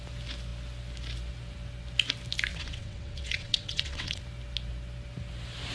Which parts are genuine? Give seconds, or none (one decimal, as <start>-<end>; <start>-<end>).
0.0-2.5; 4.2-5.7